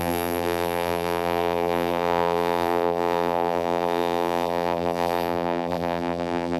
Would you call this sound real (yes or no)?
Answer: no